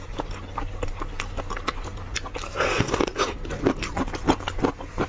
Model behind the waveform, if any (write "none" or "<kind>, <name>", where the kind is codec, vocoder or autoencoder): none